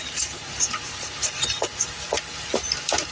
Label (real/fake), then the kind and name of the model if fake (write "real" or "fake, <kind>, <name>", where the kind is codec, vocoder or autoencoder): fake, vocoder, BigVGAN v2